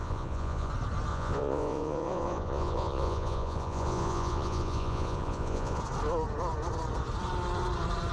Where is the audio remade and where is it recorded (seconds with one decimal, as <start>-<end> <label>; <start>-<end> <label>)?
0.0-0.7 remade; 0.7-1.1 recorded; 1.1-5.8 remade; 5.8-8.1 recorded